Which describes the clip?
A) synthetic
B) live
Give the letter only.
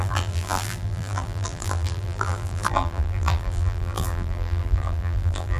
A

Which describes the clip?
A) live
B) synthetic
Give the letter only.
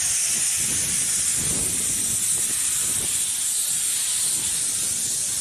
A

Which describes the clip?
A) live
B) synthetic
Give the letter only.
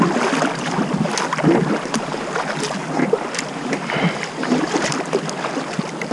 A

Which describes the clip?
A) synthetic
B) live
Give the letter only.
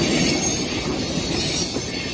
B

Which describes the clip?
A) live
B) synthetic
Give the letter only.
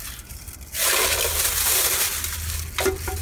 A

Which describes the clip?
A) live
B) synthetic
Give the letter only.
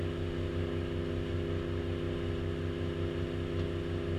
A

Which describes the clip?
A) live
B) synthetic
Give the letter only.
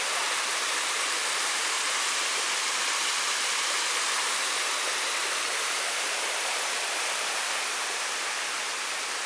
B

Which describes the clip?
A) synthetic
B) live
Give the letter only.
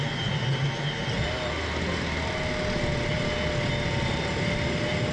B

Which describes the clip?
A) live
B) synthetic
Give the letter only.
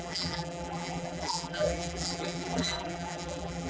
B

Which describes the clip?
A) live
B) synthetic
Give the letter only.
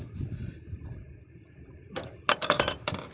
B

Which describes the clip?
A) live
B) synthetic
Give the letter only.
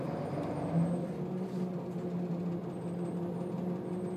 A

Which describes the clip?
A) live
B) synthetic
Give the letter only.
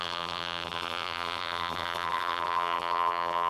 B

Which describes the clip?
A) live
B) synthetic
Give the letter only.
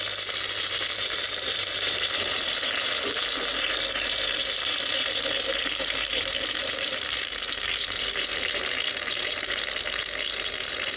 B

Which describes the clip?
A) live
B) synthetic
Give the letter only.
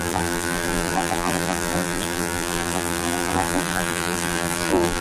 B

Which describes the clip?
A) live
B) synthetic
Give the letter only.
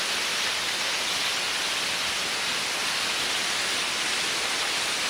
A